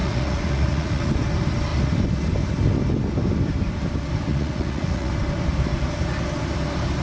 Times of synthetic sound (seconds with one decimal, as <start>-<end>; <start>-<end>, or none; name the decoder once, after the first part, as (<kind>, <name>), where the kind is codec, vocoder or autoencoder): 0.0-1.1 (vocoder, Vocos); 4.3-5.1